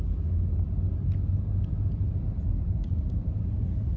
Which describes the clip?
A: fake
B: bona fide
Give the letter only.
B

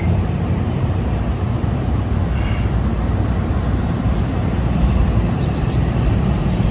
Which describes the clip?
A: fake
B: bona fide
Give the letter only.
A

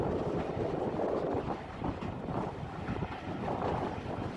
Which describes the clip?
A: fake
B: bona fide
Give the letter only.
B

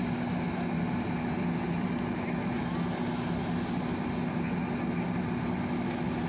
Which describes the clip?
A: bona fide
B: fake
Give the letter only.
A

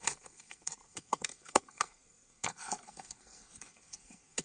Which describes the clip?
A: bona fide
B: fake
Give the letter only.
B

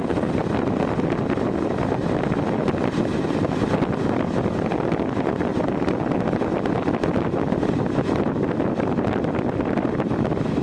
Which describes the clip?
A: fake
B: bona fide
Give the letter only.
B